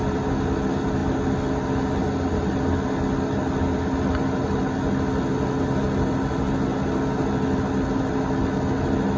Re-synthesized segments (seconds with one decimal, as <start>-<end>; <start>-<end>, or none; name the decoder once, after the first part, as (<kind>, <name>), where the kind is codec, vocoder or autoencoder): none